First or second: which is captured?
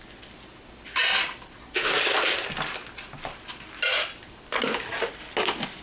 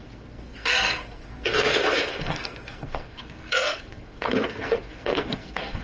first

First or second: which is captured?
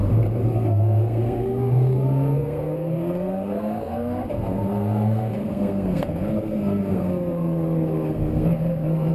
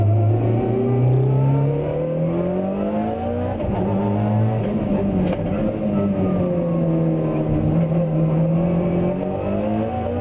second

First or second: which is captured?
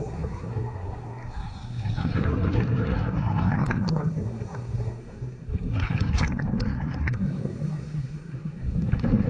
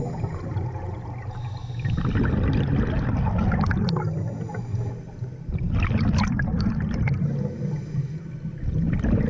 second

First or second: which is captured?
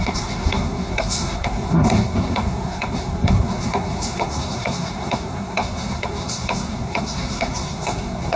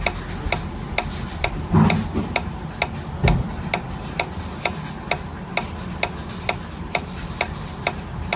second